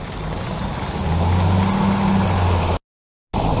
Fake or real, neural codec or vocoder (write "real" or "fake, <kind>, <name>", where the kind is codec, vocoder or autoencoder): real